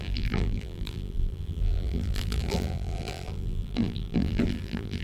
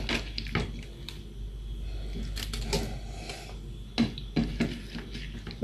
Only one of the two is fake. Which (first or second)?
first